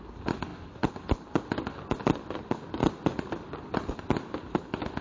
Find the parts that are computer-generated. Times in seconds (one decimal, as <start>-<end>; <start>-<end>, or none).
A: none

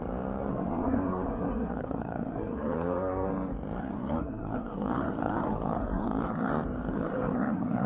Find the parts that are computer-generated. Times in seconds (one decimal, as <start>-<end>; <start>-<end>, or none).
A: 0.5-3.3; 3.8-6.5; 6.9-7.9

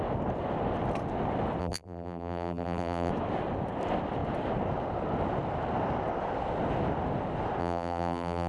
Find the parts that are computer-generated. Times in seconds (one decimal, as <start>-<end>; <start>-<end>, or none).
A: 1.6-3.1; 7.6-8.5

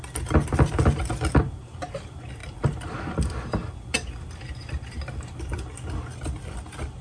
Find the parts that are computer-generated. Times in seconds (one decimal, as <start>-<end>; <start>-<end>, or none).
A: none

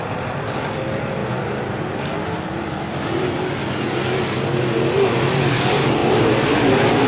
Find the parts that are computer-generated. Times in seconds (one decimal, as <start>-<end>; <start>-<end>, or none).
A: none

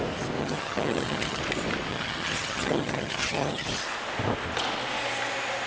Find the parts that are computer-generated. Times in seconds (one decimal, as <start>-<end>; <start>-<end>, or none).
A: 0.4-1.4; 1.9-3.7

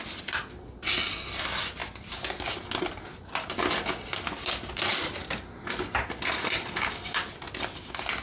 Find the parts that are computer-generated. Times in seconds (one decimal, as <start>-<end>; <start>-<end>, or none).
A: none

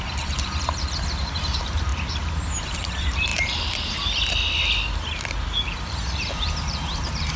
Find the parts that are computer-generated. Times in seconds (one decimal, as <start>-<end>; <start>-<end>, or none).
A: 0.0-1.9; 2.6-3.3; 5.4-7.4